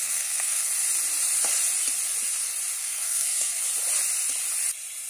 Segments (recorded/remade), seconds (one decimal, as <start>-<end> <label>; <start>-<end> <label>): 0.0-0.7 remade; 0.7-2.8 recorded; 2.8-3.6 remade; 3.6-5.1 recorded